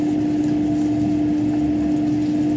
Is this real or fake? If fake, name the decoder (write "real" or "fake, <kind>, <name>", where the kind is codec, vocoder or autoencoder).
real